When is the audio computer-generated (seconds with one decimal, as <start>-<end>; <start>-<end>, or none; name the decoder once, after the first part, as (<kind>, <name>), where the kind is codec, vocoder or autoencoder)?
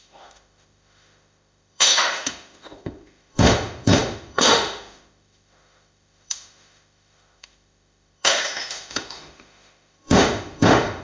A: 0.0-11.0 (autoencoder, DAC-VAE)